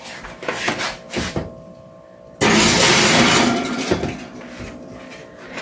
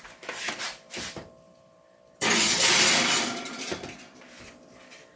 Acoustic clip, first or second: first